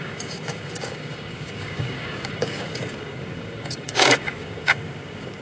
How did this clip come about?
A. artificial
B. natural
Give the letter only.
A